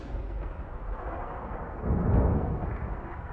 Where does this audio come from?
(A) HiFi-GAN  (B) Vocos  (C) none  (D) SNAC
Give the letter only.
D